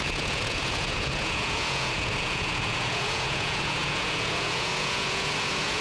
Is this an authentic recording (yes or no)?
no